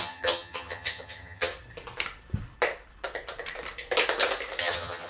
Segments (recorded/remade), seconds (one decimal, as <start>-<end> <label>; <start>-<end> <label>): 0.0-1.5 remade; 1.5-4.6 recorded; 4.6-5.1 remade